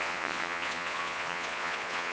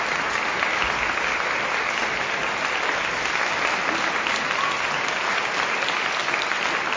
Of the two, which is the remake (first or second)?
first